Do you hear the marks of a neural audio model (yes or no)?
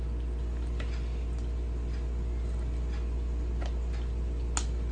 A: no